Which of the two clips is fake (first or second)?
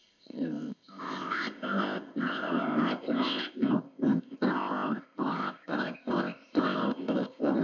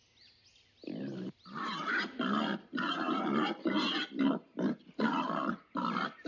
first